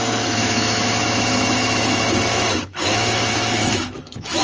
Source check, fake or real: fake